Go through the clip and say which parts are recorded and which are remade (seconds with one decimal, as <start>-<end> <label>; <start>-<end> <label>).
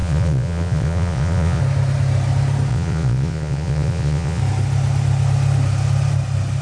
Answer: 0.0-1.6 remade; 1.6-2.7 recorded; 2.7-4.4 remade; 4.4-6.6 recorded